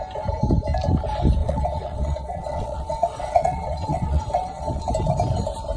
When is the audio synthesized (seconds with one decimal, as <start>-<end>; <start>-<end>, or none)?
1.4-4.9